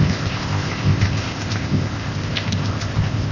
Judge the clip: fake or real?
fake